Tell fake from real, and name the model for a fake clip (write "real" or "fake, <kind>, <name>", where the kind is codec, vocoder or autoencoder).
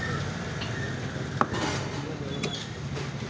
real